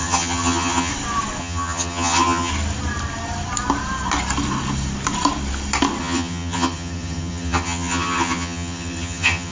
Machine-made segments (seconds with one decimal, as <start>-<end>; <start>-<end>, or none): 0.0-0.9; 1.4-2.5; 6.0-9.5

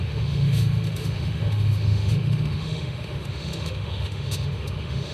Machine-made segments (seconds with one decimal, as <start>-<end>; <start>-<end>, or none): 0.0-5.1

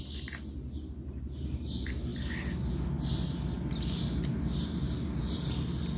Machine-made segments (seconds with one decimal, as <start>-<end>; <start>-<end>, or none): none

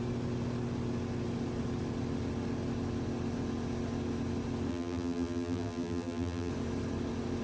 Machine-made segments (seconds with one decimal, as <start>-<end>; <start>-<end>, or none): 4.7-6.5

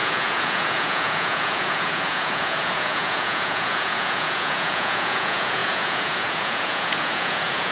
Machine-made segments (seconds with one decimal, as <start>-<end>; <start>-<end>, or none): 0.0-7.7

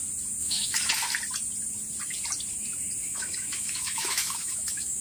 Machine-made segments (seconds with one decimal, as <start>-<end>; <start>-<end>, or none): 0.4-0.9; 3.0-5.0

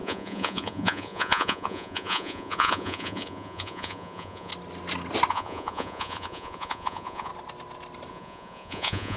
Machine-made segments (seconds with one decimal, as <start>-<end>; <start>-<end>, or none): 0.0-4.5; 5.3-7.3; 8.1-9.2